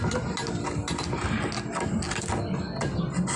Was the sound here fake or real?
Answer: real